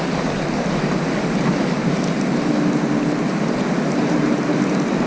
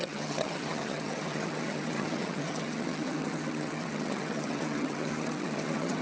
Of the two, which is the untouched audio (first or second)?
first